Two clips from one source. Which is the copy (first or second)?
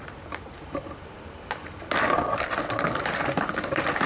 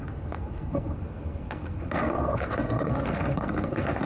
second